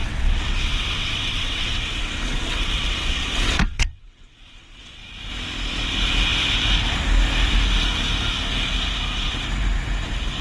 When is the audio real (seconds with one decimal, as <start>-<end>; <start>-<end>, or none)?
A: 5.0-10.4